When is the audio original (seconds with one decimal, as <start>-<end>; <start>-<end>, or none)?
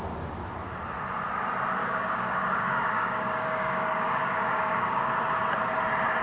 0.0-1.8; 5.1-6.2